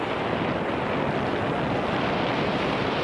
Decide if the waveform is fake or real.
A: real